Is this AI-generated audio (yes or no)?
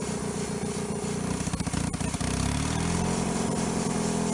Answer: no